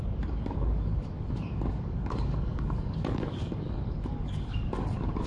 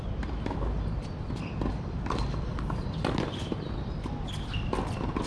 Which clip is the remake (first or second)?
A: first